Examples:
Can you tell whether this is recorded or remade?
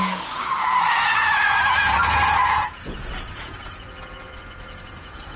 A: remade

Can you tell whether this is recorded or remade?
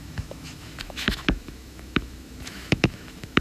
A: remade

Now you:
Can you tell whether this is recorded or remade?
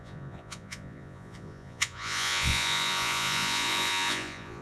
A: remade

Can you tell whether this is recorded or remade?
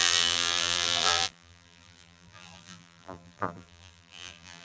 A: remade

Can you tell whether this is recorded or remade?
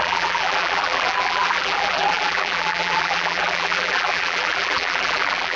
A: remade